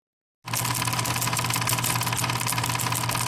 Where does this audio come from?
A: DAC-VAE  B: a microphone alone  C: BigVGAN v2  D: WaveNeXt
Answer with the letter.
B